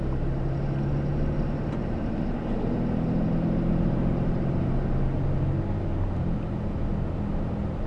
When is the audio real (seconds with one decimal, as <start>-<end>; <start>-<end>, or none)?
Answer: 0.0-7.9